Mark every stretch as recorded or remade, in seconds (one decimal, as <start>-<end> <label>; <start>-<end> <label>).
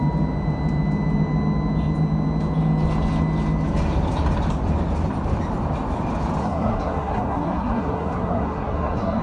0.0-6.4 recorded; 6.4-9.2 remade